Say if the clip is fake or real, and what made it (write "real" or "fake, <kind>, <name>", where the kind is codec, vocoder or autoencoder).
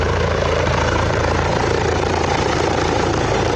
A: fake, vocoder, BigVGAN v2